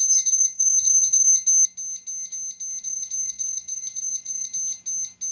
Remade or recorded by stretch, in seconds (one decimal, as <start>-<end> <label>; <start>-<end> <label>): 0.0-1.3 remade; 1.3-2.8 recorded; 2.8-4.5 remade; 4.5-5.3 recorded